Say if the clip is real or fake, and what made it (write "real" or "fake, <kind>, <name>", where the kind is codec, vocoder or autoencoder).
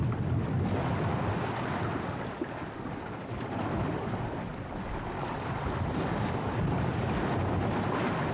real